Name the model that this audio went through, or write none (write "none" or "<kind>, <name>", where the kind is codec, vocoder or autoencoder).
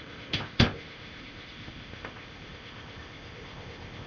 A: codec, ZipCodec